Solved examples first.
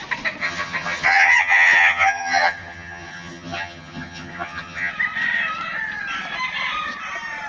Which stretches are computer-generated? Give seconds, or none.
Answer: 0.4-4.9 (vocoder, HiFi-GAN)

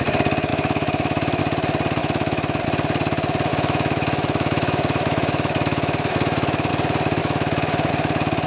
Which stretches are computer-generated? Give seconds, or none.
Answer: 0.5-1.4 (autoencoder, DAC-VAE); 2.0-2.6; 3.5-6.7; 7.2-7.9

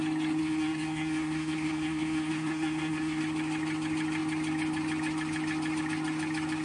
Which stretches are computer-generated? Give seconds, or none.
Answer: 0.4-3.2 (codec, SNAC)